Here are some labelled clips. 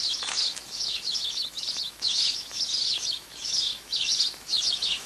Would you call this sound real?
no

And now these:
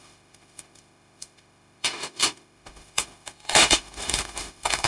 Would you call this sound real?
no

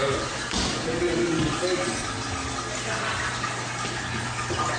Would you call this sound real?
yes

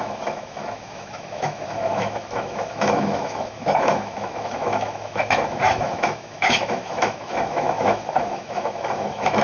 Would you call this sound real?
no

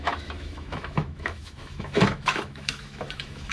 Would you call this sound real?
no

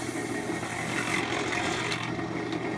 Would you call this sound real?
yes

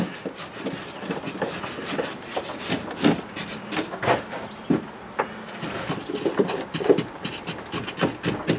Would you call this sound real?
yes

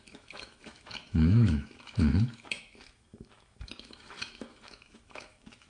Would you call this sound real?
no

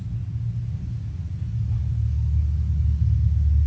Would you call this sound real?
yes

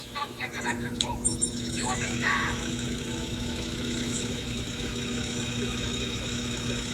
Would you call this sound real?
no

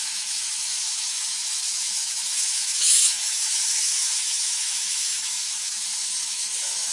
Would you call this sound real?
no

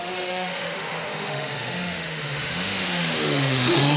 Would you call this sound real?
no